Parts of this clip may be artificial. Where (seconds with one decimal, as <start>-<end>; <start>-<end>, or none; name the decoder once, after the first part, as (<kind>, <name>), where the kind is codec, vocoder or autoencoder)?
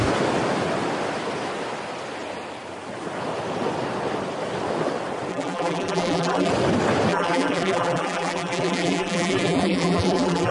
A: 5.3-6.5 (vocoder, BigVGAN v2); 7.1-10.5